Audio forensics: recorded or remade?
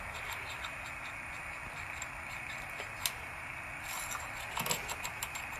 recorded